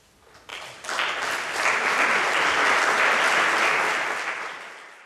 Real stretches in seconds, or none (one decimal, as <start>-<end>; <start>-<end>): 0.0-5.1